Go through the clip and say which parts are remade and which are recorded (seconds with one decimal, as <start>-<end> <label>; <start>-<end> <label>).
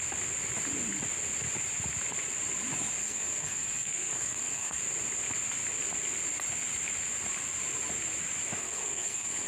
0.0-3.0 recorded; 3.0-4.8 remade; 4.8-8.6 recorded; 8.6-9.5 remade